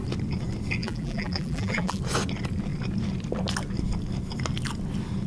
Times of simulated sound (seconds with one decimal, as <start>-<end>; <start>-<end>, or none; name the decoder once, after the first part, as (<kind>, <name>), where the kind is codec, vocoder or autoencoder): 0.8-2.0 (vocoder, BigVGAN v2)